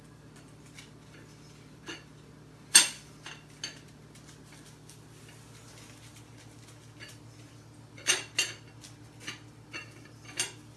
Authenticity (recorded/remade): recorded